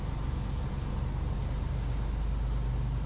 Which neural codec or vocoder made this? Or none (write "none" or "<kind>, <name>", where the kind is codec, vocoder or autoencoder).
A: none